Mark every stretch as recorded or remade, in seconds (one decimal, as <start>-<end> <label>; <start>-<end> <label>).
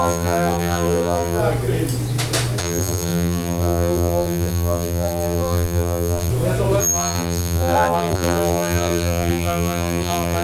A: 0.0-1.4 remade; 1.4-2.6 recorded; 2.6-6.3 remade; 6.3-6.8 recorded; 6.8-10.4 remade